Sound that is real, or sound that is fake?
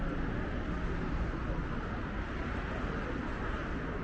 real